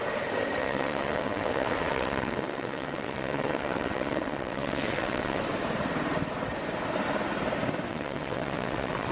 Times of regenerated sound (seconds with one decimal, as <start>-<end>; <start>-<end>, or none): 0.6-5.4; 7.9-9.1